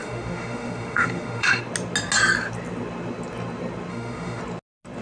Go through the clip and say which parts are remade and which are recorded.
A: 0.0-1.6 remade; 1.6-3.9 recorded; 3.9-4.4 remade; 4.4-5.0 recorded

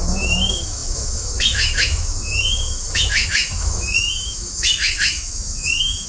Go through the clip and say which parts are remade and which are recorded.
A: 0.0-6.1 remade

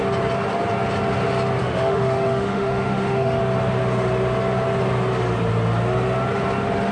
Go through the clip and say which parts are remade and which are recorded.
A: 0.0-1.6 recorded; 1.6-3.4 remade; 3.4-6.9 recorded

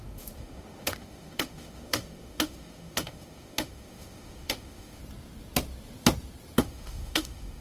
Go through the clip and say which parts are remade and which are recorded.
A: 0.0-5.0 remade; 5.0-6.6 recorded; 6.6-7.6 remade

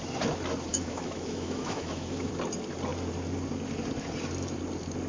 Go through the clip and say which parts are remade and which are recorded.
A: 0.0-0.7 recorded; 0.7-2.3 remade; 2.3-5.1 recorded

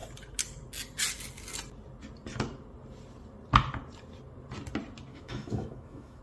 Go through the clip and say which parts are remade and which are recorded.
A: 0.0-5.1 recorded; 5.1-6.2 remade